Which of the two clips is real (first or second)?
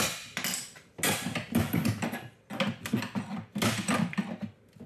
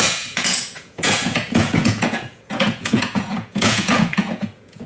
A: first